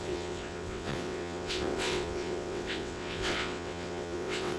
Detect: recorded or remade remade